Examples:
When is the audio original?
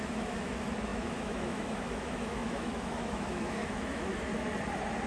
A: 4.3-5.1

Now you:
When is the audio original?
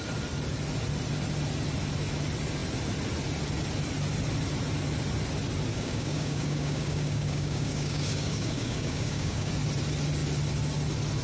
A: 0.0-5.7; 9.5-11.2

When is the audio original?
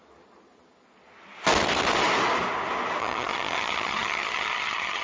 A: 0.0-3.0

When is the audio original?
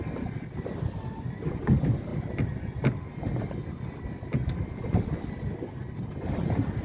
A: 0.0-6.8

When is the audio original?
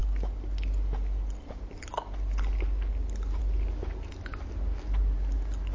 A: 0.0-5.7